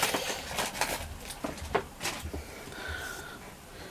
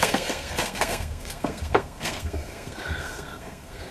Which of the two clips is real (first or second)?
first